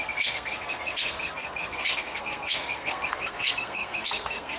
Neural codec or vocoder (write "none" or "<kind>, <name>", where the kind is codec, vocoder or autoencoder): codec, SNAC